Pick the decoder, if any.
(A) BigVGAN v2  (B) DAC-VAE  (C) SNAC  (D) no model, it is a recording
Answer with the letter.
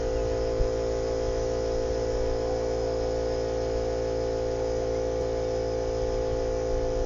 D